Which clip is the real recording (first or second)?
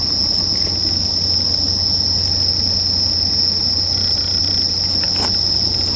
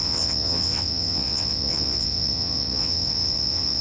first